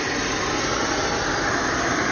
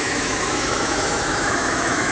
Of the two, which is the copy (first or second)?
second